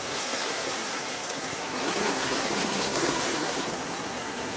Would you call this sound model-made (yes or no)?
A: yes